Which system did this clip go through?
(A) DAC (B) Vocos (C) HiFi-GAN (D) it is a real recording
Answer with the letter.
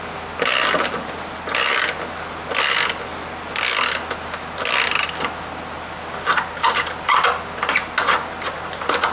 D